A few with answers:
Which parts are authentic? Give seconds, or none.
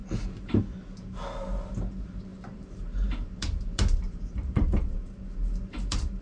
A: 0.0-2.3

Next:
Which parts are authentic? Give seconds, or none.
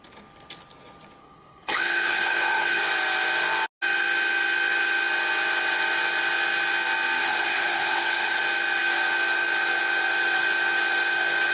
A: 0.0-1.2; 2.8-7.2; 8.4-11.5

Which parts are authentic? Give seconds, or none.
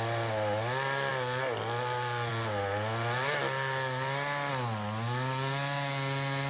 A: 0.0-6.5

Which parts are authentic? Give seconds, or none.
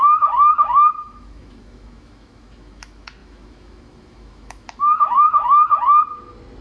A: 5.7-6.6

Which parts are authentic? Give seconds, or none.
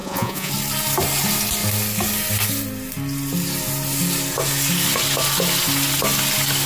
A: 0.5-6.7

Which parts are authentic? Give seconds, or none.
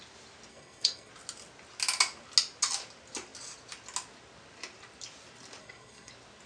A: 0.0-0.5; 1.1-5.6; 6.1-6.5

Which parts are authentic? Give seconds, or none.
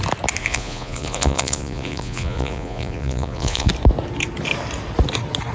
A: 0.0-0.4; 3.7-5.5